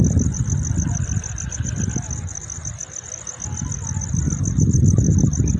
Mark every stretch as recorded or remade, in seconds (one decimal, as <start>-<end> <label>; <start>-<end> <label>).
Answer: 0.0-5.6 recorded